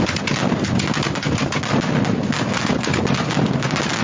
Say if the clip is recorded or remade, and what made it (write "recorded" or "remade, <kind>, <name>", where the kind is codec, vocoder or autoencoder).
recorded